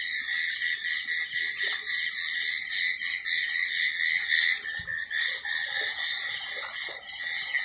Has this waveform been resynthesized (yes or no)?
no